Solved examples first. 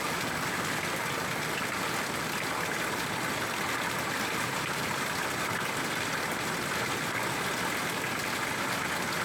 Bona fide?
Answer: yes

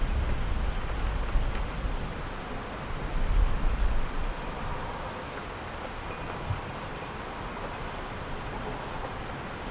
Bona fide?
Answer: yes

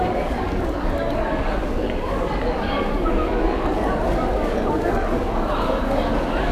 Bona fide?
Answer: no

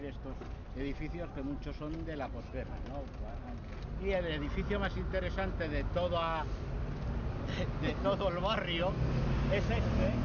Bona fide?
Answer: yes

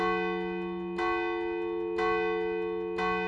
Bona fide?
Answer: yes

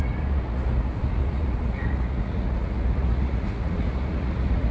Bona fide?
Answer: no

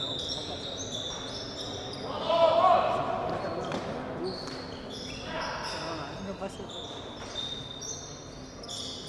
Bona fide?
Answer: yes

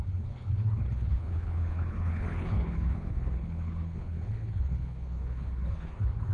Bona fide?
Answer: no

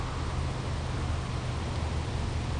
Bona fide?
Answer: yes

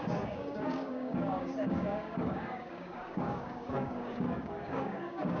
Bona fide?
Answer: no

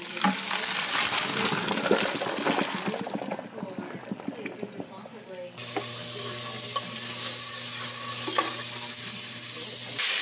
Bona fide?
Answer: yes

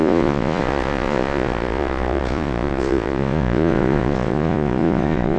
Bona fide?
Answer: no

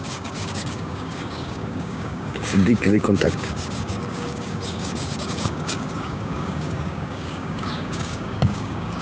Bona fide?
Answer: no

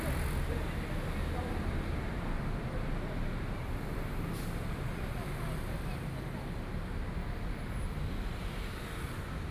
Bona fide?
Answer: yes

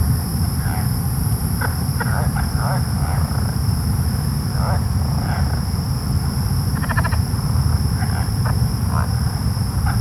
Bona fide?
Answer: no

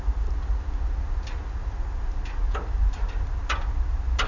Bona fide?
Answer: yes